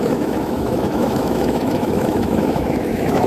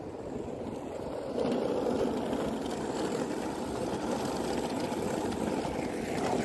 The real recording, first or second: second